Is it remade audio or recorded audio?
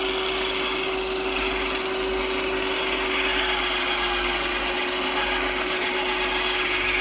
recorded